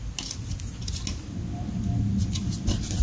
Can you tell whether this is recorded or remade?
recorded